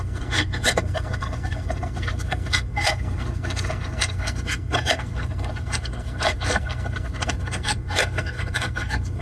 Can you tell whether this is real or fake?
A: fake